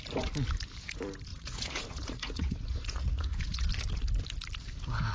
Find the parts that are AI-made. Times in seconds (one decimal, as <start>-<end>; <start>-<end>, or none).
1.3-3.7